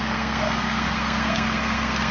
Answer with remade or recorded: remade